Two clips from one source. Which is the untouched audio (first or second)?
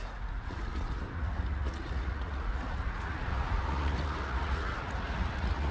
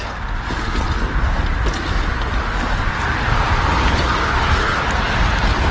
second